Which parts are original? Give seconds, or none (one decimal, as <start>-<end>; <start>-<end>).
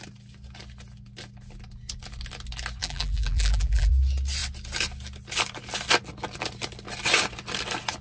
0.0-2.8; 3.9-8.0